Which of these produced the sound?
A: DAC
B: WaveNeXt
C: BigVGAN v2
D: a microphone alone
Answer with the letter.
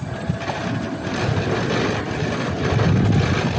D